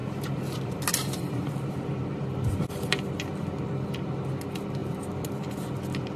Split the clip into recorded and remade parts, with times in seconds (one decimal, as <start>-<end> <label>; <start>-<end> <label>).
0.0-3.7 remade; 3.7-4.8 recorded; 4.8-6.2 remade